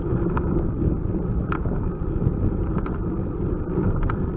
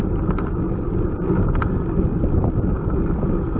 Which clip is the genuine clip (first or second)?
second